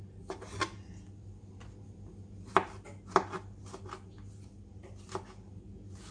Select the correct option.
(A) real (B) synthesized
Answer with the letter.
A